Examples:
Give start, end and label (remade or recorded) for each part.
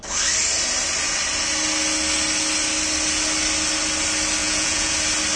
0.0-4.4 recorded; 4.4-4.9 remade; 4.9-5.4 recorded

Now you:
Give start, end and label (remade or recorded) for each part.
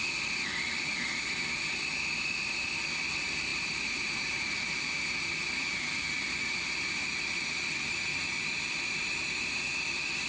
0.0-3.5 recorded; 3.5-4.5 remade; 4.5-10.3 recorded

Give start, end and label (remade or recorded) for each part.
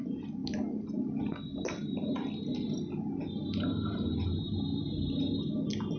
0.0-6.0 recorded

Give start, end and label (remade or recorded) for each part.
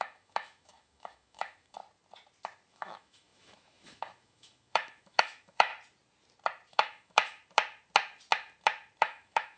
0.0-1.8 remade; 1.8-2.7 recorded; 2.7-5.7 remade; 5.7-6.7 recorded; 6.7-7.4 remade; 7.4-9.0 recorded; 9.0-9.6 remade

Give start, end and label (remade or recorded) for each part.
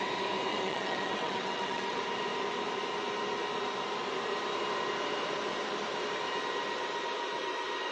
0.0-0.5 recorded; 0.5-2.0 remade; 2.0-7.9 recorded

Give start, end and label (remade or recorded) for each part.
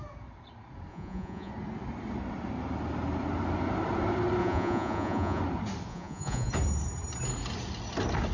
0.0-0.9 recorded; 0.9-1.5 remade; 1.5-4.4 recorded; 4.4-5.4 remade; 5.4-5.9 recorded; 5.9-6.5 remade; 6.5-8.3 recorded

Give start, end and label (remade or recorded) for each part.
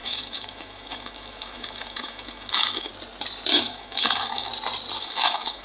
0.0-2.9 remade; 2.9-3.5 recorded; 3.5-4.5 remade; 4.5-5.0 recorded; 5.0-5.6 remade